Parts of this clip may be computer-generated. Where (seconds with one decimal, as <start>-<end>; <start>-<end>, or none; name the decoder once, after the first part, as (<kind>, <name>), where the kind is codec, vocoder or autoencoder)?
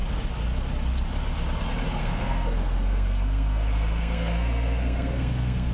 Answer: 2.0-5.7 (codec, SNAC)